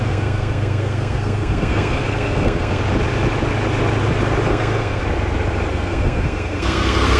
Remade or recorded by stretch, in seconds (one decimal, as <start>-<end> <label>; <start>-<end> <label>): 0.0-2.8 remade; 2.8-4.5 recorded; 4.5-5.0 remade; 5.0-5.7 recorded; 5.7-7.2 remade